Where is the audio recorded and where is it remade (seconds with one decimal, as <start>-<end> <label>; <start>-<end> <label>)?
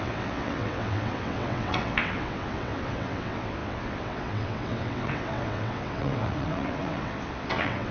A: 0.0-7.9 remade